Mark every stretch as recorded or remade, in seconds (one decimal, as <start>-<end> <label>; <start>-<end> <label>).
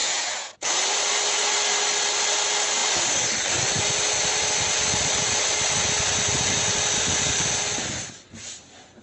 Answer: 0.0-0.7 remade; 0.7-9.0 recorded